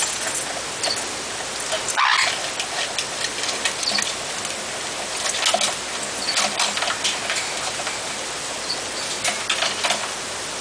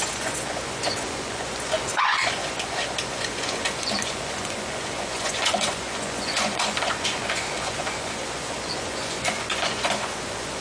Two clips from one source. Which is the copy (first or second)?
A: second